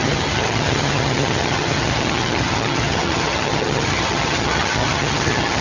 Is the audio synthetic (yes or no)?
yes